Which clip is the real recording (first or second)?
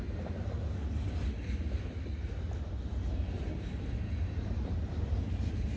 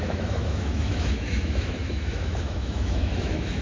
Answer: first